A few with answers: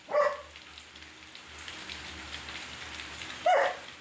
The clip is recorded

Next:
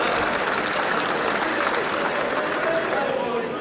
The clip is recorded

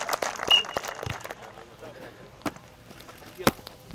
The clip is remade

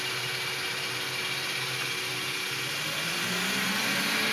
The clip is recorded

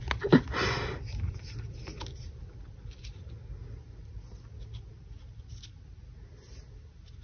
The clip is recorded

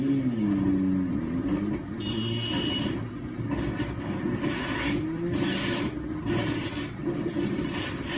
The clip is recorded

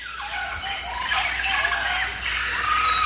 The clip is recorded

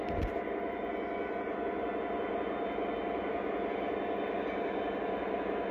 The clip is recorded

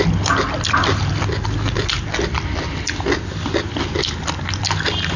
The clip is recorded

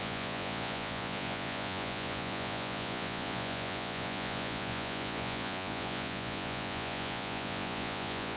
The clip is remade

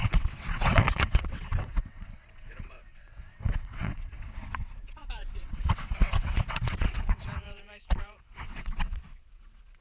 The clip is remade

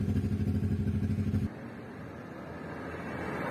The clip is recorded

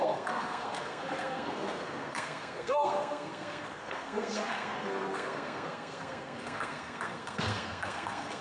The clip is remade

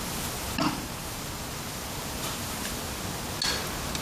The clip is recorded